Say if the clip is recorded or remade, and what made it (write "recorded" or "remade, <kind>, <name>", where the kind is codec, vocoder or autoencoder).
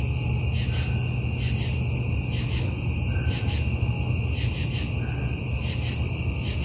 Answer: recorded